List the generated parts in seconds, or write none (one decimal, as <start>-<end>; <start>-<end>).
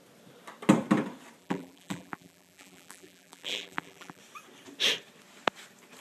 1.4-4.2